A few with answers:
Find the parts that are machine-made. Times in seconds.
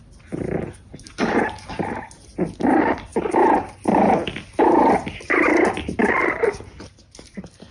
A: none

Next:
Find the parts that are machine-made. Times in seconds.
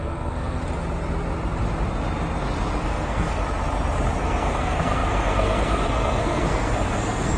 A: 0.0-0.6 (codec, SNAC); 2.8-3.4; 4.2-7.4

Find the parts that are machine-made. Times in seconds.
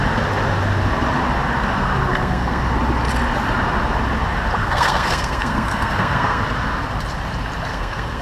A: 2.1-2.6 (codec, SNAC); 4.6-6.4; 7.7-8.2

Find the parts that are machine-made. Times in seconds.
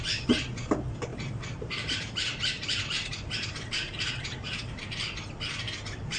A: 1.1-4.8 (vocoder, BigVGAN v2)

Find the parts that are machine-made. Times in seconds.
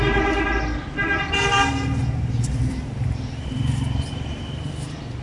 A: 2.0-5.2 (vocoder, BigVGAN v2)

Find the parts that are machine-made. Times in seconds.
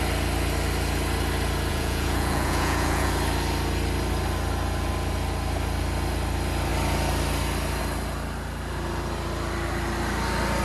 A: 1.7-3.1 (vocoder, Vocos)